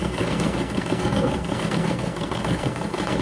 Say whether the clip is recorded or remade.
remade